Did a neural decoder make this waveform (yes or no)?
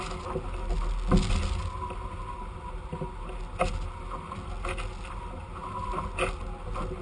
no